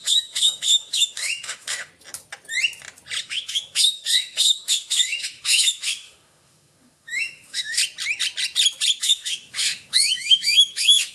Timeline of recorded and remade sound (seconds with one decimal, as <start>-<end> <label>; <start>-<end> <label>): 0.0-1.9 remade; 1.9-3.2 recorded; 3.2-7.8 remade; 7.8-9.0 recorded; 9.0-11.1 remade